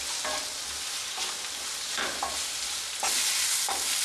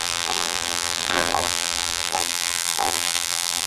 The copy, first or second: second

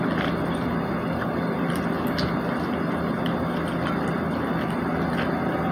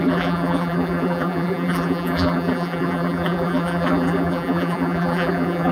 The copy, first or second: second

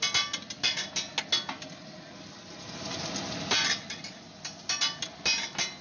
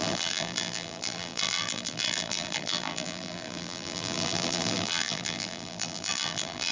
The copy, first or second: second